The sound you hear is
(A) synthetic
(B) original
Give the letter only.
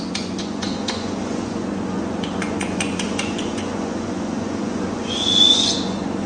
A